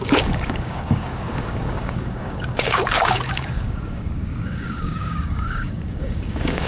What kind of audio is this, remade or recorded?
remade